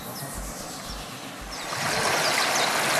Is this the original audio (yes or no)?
yes